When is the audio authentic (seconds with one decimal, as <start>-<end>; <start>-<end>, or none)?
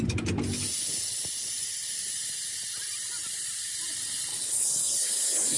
0.0-4.3